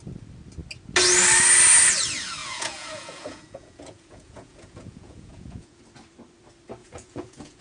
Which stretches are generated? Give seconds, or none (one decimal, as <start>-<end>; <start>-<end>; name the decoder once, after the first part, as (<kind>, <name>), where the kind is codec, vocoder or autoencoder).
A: 2.4-5.8 (vocoder, Vocos); 6.8-7.6